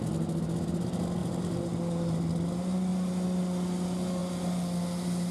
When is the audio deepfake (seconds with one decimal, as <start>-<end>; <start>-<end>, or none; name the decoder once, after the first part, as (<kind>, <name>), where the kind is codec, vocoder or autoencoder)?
1.2-2.2 (vocoder, BigVGAN v2)